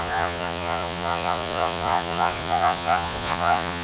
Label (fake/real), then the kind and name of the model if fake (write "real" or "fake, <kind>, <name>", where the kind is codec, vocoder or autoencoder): fake, vocoder, Vocos